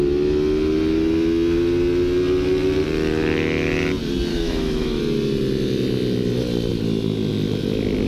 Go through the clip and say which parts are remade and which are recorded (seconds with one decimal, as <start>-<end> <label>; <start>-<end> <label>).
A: 0.0-4.3 recorded; 4.3-5.0 remade; 5.0-8.1 recorded